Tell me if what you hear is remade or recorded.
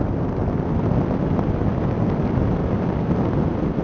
recorded